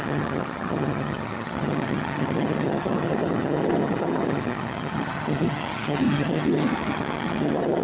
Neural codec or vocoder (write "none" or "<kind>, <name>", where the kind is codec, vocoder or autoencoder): vocoder, HiFi-GAN